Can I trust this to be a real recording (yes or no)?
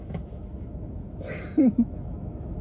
no